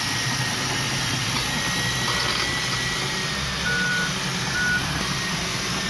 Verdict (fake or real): real